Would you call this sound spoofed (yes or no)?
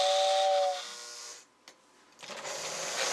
no